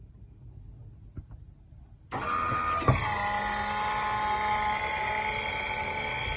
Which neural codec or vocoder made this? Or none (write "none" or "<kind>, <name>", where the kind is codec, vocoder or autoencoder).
none